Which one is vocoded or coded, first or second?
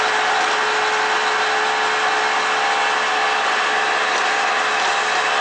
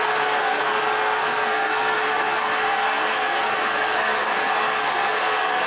second